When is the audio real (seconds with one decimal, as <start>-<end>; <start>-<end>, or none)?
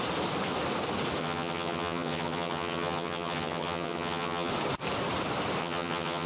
0.0-1.2; 4.5-5.6